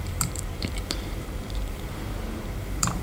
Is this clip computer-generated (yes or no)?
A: yes